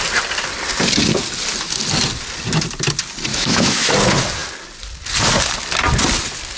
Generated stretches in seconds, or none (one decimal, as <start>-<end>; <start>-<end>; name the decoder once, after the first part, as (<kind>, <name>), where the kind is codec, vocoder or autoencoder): 3.3-3.9 (autoencoder, DAC-VAE)